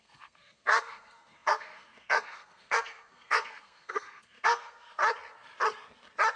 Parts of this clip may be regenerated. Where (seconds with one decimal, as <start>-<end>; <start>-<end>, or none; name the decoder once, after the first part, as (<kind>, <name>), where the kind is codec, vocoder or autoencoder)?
0.0-5.0 (codec, SNAC)